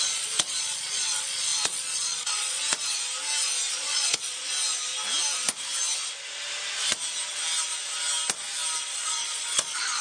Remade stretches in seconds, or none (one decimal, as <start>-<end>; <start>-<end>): 0.0-2.6; 3.7-4.4; 8.9-10.0